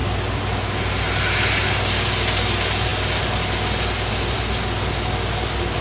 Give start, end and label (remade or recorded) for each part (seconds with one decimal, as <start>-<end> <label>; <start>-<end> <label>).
0.0-5.8 recorded

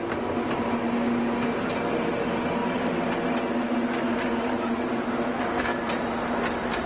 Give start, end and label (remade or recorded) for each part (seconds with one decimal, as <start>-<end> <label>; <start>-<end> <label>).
0.0-6.9 recorded

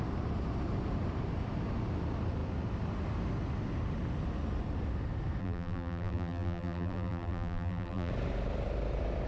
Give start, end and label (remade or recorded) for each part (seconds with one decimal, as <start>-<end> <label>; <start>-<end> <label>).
0.0-5.4 recorded; 5.4-8.1 remade; 8.1-9.3 recorded

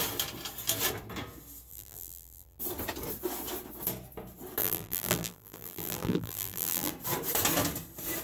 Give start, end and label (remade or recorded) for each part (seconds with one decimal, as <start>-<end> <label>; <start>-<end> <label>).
0.0-1.7 recorded; 1.7-2.6 remade; 2.6-4.6 recorded; 4.6-6.9 remade; 6.9-8.2 recorded

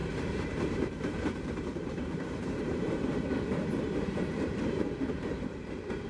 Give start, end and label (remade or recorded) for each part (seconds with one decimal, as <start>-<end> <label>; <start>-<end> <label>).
0.0-6.1 remade

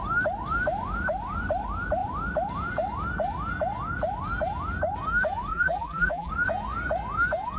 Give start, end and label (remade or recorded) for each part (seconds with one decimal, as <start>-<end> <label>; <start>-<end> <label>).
0.0-5.5 recorded; 5.5-6.3 remade; 6.3-7.6 recorded